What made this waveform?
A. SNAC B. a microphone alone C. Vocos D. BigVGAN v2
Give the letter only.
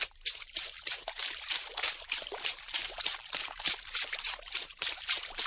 D